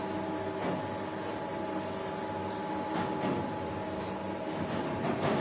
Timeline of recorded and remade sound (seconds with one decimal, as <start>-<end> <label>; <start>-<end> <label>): 0.0-5.4 recorded